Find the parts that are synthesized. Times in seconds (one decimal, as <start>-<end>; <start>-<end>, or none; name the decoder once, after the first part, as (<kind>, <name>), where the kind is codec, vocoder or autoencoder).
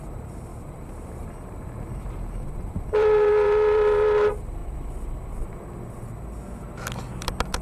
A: 0.0-4.6 (vocoder, BigVGAN v2)